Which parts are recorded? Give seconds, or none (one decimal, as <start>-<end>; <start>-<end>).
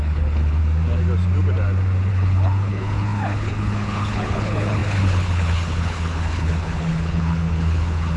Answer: 0.6-2.1